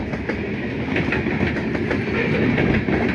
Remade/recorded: recorded